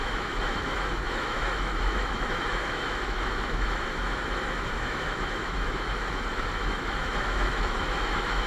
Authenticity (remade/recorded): remade